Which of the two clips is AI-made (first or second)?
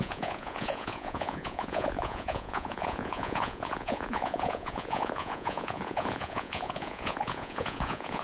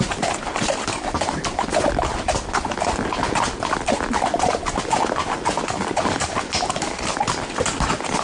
first